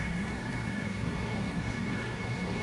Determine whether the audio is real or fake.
fake